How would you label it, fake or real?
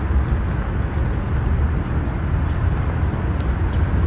real